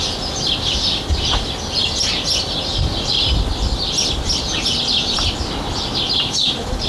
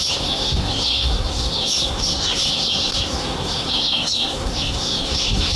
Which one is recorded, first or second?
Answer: first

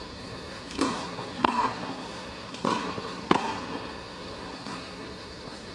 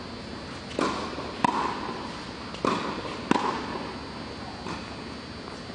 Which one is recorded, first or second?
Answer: second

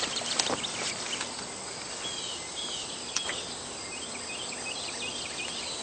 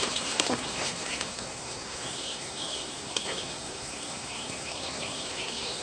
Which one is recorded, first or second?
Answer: first